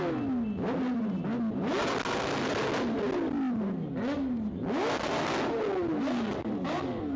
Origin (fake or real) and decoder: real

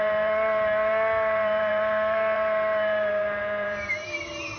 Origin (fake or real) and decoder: fake, vocoder, BigVGAN v2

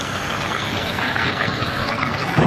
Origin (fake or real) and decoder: fake, codec, SNAC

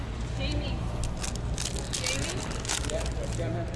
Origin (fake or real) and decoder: real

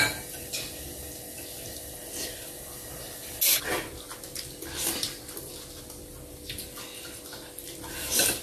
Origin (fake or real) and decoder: real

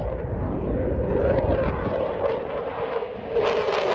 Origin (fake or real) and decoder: real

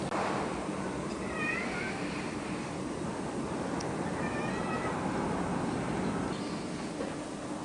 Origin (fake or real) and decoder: real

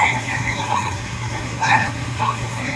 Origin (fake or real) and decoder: fake, codec, SNAC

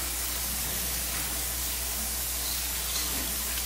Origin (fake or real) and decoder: fake, codec, DAC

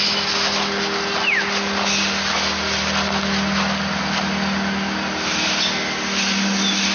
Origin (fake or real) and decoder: real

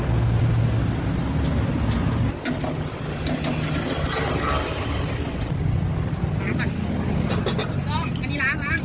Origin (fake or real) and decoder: real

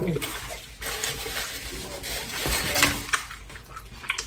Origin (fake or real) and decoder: real